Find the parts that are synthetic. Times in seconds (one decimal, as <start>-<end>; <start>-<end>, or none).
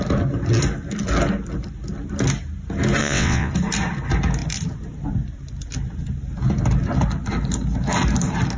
3.0-3.5